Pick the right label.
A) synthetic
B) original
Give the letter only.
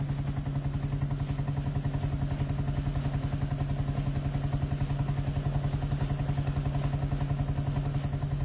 B